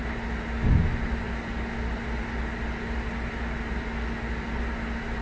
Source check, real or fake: real